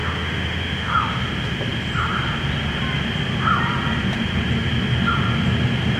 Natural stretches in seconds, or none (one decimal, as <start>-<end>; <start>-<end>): 1.2-6.0